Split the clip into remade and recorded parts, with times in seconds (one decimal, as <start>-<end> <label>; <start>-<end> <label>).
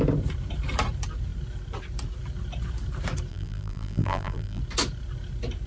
0.0-3.3 recorded; 3.3-4.6 remade; 4.6-5.7 recorded